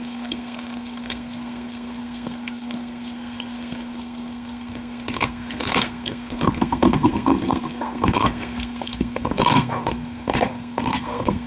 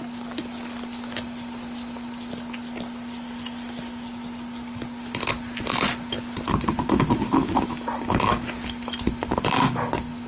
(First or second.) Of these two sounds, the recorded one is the second